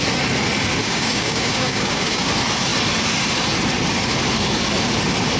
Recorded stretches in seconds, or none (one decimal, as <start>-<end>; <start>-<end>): 0.0-0.8; 2.3-5.4